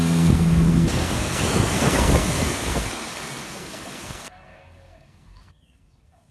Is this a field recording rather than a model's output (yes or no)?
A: no